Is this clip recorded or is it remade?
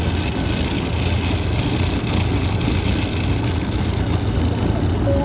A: recorded